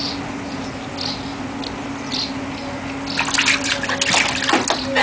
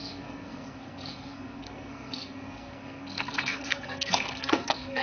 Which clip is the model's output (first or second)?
second